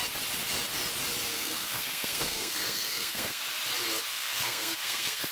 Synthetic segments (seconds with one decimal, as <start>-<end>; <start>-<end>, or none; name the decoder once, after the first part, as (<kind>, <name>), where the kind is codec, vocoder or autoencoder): 1.3-3.4 (codec, SNAC); 4.1-5.3